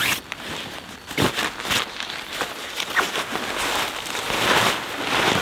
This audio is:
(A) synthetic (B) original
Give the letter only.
B